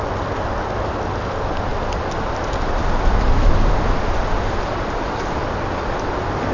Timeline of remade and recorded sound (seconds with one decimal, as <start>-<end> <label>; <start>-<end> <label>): 0.0-6.5 recorded